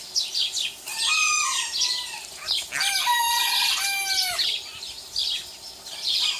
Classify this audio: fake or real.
real